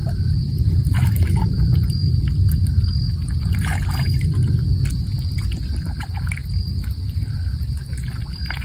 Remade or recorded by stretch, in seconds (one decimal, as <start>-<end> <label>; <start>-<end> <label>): 0.0-8.6 recorded